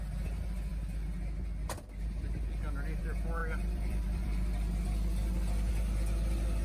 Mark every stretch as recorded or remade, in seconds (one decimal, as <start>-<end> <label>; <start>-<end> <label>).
0.0-3.4 recorded; 3.4-5.7 remade; 5.7-6.6 recorded